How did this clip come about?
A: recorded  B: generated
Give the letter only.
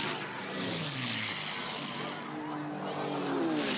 A